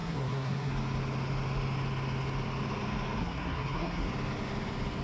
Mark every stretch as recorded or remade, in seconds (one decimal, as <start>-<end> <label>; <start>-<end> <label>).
0.0-0.7 remade; 0.7-3.2 recorded; 3.2-4.1 remade; 4.1-5.0 recorded